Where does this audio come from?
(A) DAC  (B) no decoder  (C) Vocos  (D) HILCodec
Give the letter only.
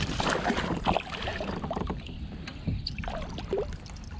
B